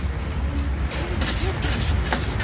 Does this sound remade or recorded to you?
recorded